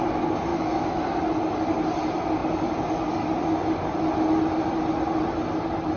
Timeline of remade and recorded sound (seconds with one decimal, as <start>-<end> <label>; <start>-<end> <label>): 0.0-0.5 recorded; 0.5-1.0 remade; 1.0-6.0 recorded